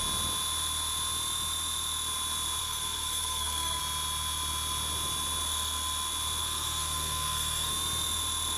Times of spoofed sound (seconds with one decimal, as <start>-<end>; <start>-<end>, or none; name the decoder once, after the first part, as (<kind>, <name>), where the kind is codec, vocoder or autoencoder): 2.6-3.8 (codec, SNAC); 6.4-7.7